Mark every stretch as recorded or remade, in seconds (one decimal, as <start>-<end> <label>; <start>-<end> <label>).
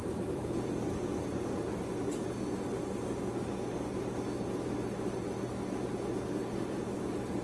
0.0-1.7 remade; 1.7-6.4 recorded; 6.4-7.4 remade